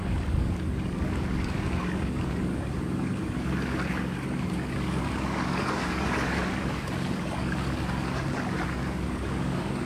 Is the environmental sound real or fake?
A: fake